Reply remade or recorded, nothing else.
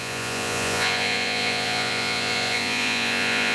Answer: remade